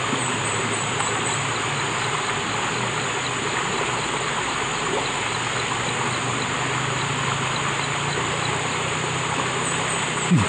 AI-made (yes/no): no